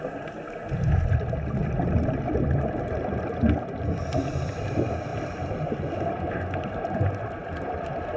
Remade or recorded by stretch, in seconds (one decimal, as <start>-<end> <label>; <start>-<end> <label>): 0.0-1.6 recorded; 1.6-4.0 remade; 4.0-5.1 recorded; 5.1-6.2 remade; 6.2-8.2 recorded